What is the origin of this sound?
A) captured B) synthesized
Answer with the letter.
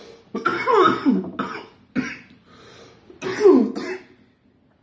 A